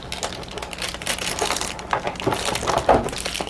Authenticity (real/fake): real